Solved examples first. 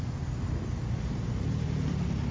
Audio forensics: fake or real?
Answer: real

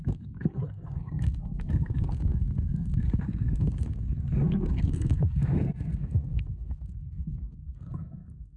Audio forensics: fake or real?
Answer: fake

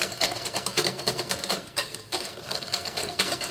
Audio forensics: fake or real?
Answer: fake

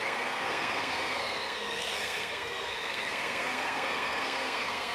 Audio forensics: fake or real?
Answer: fake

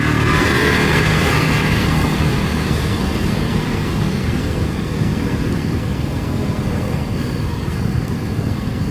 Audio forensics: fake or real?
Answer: fake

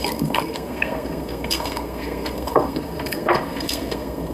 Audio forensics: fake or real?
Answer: fake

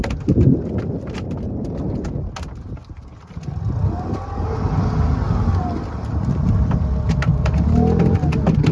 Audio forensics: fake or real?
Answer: real